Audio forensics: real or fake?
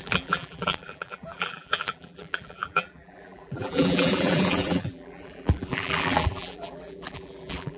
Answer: fake